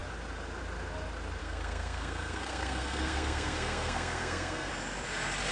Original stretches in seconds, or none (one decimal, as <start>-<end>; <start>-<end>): 0.0-1.4; 4.7-5.5